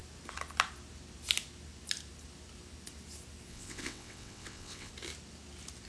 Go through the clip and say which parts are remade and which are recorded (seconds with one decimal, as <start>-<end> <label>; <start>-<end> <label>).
0.0-3.5 recorded; 3.5-4.9 remade; 4.9-5.9 recorded